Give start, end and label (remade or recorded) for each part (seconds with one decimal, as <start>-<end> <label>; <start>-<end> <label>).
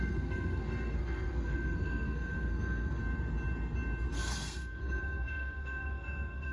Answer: 0.0-3.0 remade; 3.0-4.1 recorded; 4.1-6.5 remade